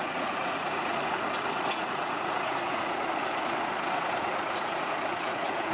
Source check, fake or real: fake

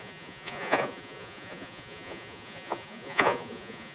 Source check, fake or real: fake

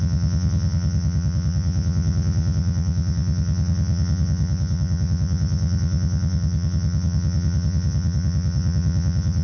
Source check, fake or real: fake